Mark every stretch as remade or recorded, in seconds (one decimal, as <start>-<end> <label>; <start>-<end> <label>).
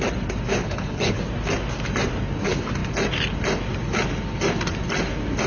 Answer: 0.0-0.6 recorded; 0.6-1.2 remade; 1.2-5.5 recorded